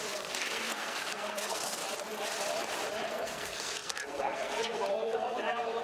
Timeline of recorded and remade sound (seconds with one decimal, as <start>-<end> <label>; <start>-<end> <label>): 0.0-1.8 remade; 1.8-3.1 recorded; 3.1-5.8 remade